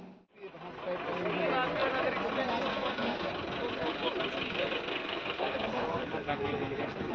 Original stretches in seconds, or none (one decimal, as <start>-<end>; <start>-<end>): 0.0-2.7; 3.3-4.9